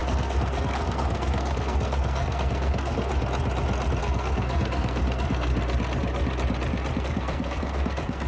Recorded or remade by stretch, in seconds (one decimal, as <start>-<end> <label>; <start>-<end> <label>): 0.0-3.1 remade; 3.1-4.0 recorded; 4.0-5.5 remade; 5.5-7.0 recorded; 7.0-8.3 remade